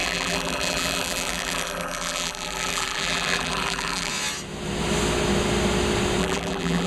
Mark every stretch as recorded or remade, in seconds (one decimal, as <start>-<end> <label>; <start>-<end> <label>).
0.0-4.1 remade; 4.1-6.2 recorded; 6.2-6.9 remade